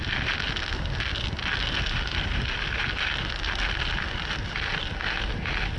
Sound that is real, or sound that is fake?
real